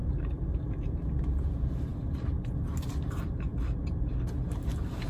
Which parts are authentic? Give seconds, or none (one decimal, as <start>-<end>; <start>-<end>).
3.5-4.3